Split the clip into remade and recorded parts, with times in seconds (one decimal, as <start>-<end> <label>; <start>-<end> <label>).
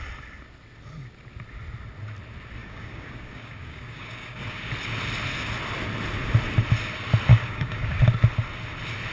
0.0-2.6 recorded; 2.6-4.7 remade; 4.7-7.3 recorded; 7.3-8.0 remade; 8.0-9.1 recorded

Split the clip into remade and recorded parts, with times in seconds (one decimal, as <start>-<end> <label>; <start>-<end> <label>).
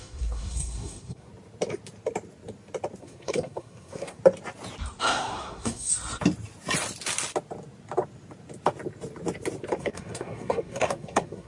0.0-1.3 remade; 1.3-3.0 recorded; 3.0-4.2 remade; 4.2-5.0 recorded; 5.0-5.9 remade; 5.9-9.8 recorded; 9.8-11.5 remade